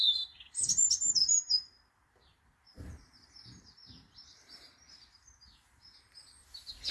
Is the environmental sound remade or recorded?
remade